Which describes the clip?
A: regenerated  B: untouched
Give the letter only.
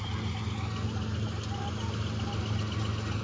B